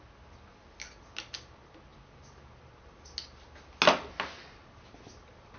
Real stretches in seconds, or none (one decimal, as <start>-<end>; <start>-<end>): 0.0-5.6